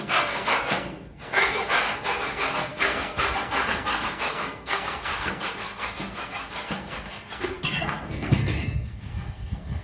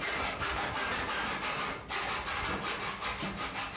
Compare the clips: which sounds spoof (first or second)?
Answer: first